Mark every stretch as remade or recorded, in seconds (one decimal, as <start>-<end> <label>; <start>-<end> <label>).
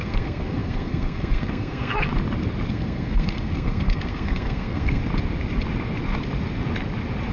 0.0-2.1 remade; 2.1-2.7 recorded; 2.7-5.0 remade; 5.0-7.3 recorded